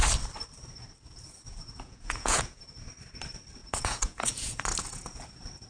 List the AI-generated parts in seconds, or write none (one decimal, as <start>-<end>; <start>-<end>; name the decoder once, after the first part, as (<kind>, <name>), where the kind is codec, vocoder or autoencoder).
1.5-2.6 (vocoder, Vocos); 3.6-4.6